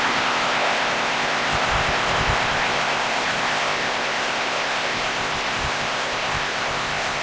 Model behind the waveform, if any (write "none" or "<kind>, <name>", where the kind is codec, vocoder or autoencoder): codec, ZipCodec